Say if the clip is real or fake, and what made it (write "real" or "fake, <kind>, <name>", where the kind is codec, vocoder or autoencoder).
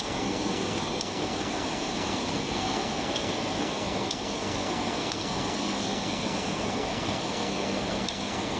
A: fake, codec, SNAC